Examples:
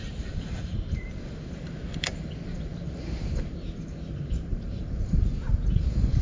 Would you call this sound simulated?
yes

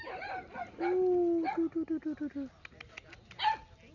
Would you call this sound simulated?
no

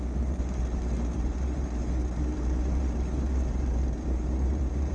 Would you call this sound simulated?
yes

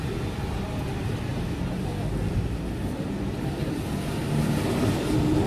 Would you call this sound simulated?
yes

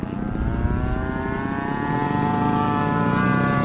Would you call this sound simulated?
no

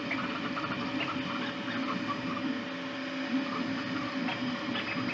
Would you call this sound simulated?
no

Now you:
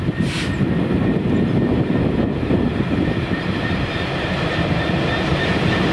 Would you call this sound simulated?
yes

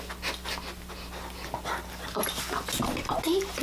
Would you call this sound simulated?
no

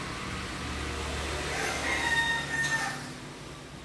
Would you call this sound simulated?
no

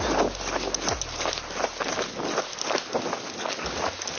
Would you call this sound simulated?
no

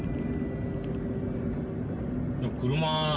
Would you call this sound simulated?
no